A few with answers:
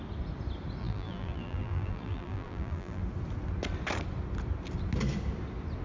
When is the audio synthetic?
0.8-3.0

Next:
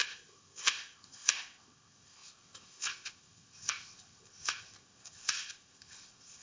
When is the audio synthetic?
0.0-6.4

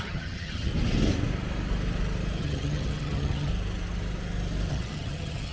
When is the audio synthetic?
0.0-0.7; 2.4-3.5; 4.7-5.5